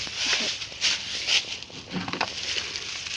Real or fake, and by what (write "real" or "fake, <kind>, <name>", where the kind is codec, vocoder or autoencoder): real